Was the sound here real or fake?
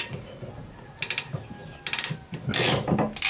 real